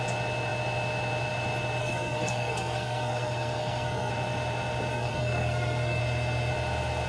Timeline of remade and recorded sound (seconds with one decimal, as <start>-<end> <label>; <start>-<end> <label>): 0.0-1.8 recorded; 1.8-4.1 remade; 4.1-4.9 recorded; 4.9-6.0 remade; 6.0-7.1 recorded